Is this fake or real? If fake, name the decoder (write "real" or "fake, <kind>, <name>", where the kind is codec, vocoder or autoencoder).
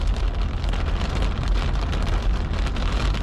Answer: real